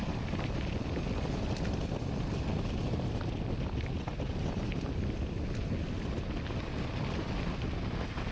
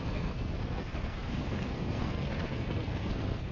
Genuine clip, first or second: first